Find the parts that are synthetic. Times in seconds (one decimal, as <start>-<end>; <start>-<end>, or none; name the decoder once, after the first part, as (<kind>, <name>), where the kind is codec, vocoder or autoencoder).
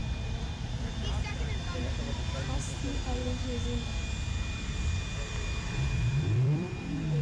0.0-3.2 (vocoder, BigVGAN v2); 4.5-7.2